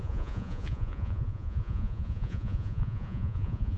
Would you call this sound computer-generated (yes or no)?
yes